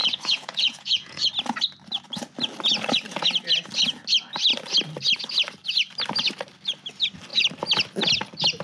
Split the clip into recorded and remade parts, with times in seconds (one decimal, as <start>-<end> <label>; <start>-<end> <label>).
0.0-1.3 remade; 1.3-8.6 recorded